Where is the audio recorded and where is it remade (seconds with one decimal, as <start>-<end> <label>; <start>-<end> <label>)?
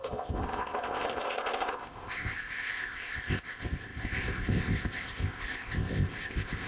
0.0-6.7 remade